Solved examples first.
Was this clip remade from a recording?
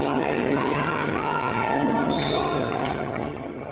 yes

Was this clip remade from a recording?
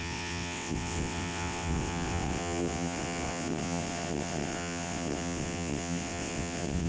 yes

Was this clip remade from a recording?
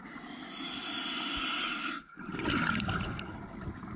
no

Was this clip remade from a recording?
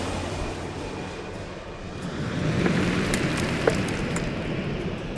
yes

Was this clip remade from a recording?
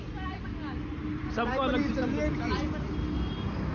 no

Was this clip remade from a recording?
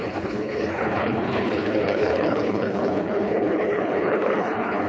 yes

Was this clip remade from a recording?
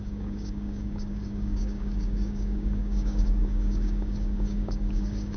yes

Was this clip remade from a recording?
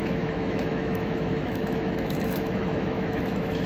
yes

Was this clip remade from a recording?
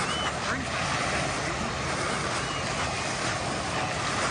no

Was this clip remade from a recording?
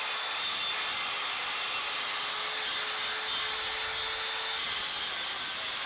no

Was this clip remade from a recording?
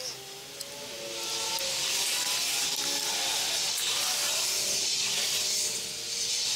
no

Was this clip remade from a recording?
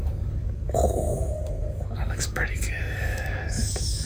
yes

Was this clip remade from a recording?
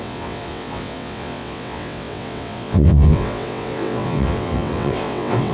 yes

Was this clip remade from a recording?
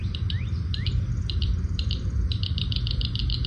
yes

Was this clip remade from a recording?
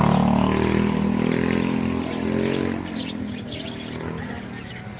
no